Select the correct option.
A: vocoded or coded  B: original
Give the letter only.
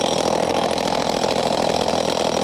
B